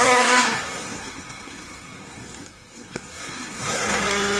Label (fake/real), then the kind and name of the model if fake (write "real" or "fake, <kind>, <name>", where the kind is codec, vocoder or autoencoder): fake, codec, SNAC